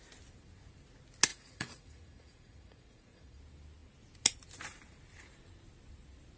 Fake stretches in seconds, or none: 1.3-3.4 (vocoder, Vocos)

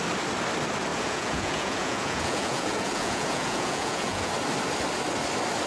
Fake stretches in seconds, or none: 0.9-4.3 (vocoder, Vocos)

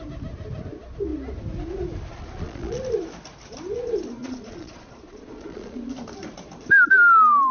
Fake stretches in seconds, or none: 2.1-2.8 (vocoder, Vocos); 4.2-5.8